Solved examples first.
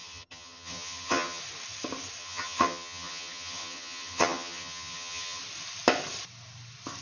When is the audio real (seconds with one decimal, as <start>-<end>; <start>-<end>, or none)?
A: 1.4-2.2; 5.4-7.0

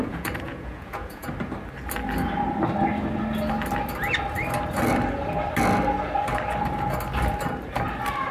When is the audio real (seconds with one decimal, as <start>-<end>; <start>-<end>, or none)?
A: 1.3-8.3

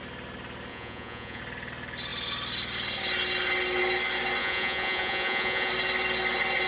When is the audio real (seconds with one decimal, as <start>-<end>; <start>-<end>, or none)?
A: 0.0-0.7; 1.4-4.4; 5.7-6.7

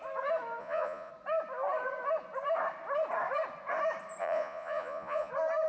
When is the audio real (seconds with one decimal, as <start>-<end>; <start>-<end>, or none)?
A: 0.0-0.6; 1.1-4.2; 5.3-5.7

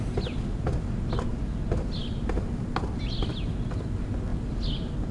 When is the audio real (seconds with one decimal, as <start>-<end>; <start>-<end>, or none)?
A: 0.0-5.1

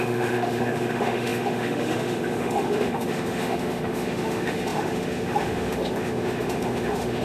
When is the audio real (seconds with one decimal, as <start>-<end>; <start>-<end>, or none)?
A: none